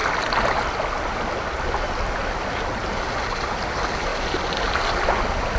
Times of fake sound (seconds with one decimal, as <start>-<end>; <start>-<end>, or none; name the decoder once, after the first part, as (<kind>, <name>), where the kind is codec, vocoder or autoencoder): none